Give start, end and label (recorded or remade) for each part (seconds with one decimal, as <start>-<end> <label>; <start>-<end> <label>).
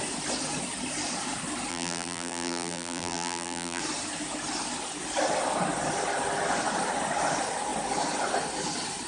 0.0-1.7 recorded; 1.7-3.8 remade; 3.8-9.1 recorded